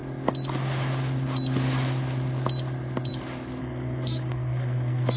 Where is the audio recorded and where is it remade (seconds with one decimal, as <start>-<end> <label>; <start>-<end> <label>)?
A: 0.0-3.6 recorded; 3.6-5.2 remade